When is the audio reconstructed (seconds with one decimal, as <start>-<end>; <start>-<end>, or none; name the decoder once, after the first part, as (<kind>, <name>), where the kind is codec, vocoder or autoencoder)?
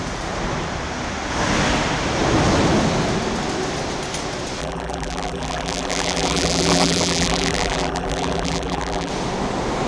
4.6-9.1 (vocoder, BigVGAN v2)